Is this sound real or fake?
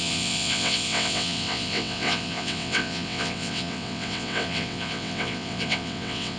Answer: fake